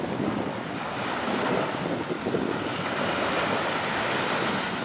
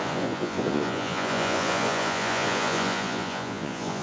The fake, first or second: second